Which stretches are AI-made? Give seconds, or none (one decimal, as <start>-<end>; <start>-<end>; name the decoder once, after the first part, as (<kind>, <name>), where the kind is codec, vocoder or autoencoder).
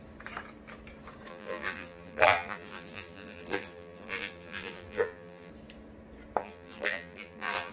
1.3-5.5 (vocoder, BigVGAN v2); 6.4-7.7